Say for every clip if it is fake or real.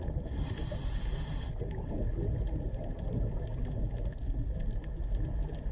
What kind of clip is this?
real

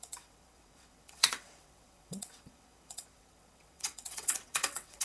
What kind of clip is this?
fake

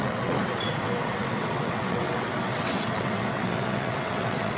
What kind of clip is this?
fake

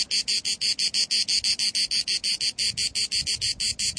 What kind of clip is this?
real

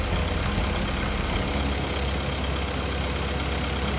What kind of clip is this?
real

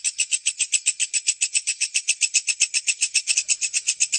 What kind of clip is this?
real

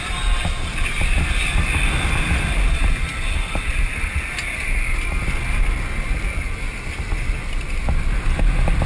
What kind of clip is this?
real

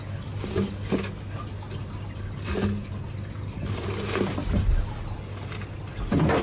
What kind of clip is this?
real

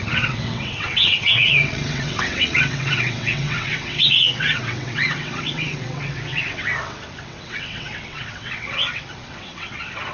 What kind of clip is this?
fake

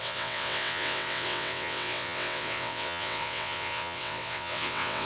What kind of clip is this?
fake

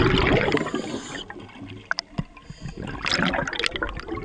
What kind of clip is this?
real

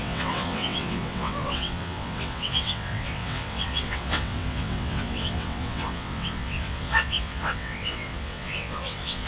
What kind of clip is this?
fake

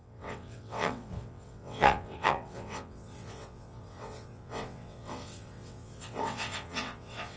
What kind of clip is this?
fake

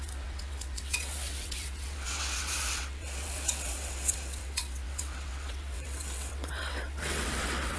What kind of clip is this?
fake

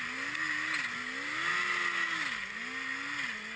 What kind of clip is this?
real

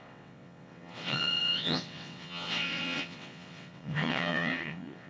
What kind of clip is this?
fake